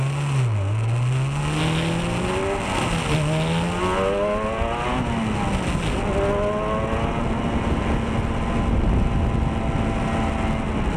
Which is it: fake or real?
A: real